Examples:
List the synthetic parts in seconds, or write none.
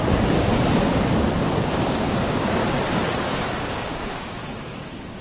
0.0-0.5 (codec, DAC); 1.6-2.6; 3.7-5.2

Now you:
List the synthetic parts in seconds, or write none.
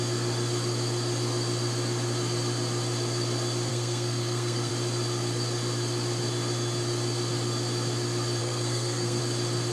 3.7-4.7 (codec, SNAC); 8.4-9.2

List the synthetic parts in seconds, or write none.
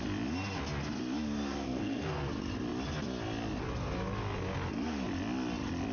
1.5-2.2 (codec, SNAC)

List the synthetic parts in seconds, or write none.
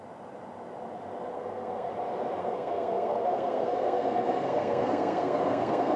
1.3-1.9 (codec, SNAC); 2.4-6.0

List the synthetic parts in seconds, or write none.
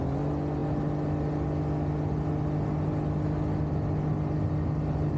none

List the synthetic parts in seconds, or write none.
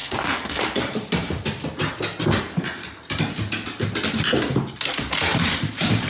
0.0-0.6 (codec, SNAC)